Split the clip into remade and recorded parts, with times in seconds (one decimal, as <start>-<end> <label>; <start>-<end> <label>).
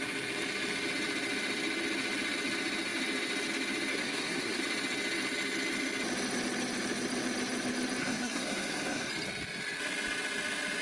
0.0-3.9 recorded; 3.9-4.6 remade; 4.6-8.0 recorded; 8.0-9.1 remade; 9.1-10.8 recorded